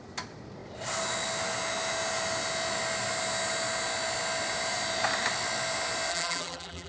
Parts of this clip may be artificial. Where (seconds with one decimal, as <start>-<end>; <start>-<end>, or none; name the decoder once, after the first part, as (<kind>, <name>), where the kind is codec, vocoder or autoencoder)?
6.1-6.9 (vocoder, BigVGAN v2)